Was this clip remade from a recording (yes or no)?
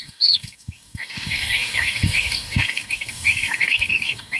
yes